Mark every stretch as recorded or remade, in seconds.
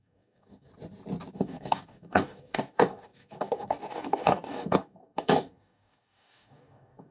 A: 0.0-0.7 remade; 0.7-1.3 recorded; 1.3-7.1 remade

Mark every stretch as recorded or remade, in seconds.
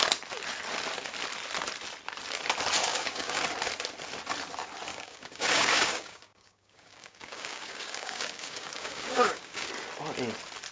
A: 0.0-2.9 recorded; 2.9-3.4 remade; 3.4-4.9 recorded; 4.9-9.7 remade; 9.7-10.7 recorded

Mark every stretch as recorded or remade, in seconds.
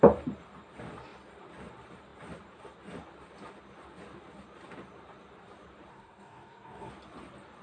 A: 0.0-5.9 recorded; 5.9-6.9 remade; 6.9-7.6 recorded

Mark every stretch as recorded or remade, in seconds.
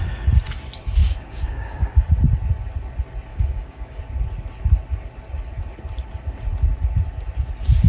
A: 0.0-1.0 recorded; 1.0-2.1 remade; 2.1-3.3 recorded; 3.3-4.0 remade; 4.0-7.9 recorded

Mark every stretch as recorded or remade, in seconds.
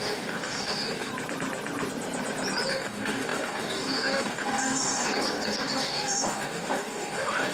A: 0.0-1.1 remade; 1.1-2.7 recorded; 2.7-7.5 remade